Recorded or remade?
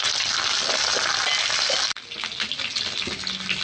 recorded